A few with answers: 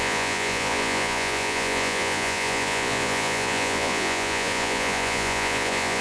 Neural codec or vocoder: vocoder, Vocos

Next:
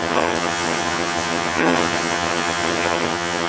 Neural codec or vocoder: vocoder, HiFi-GAN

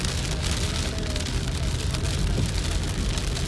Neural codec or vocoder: none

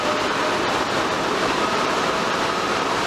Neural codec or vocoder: none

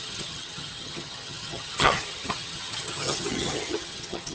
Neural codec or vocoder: vocoder, HiFi-GAN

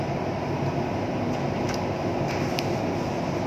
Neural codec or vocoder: none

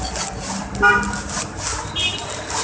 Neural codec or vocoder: none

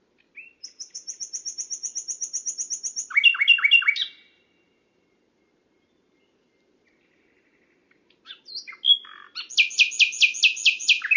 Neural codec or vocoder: none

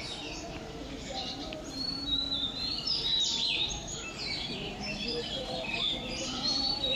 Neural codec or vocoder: vocoder, BigVGAN v2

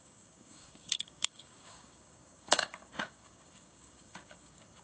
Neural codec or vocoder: codec, DAC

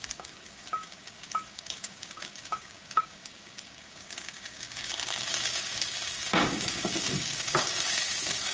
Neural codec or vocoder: codec, DAC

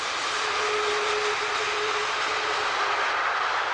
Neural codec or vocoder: none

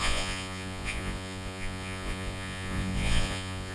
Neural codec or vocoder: vocoder, Vocos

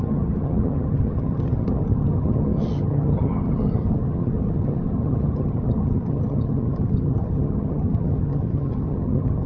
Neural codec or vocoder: vocoder, HiFi-GAN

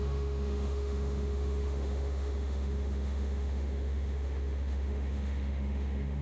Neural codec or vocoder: autoencoder, DAC-VAE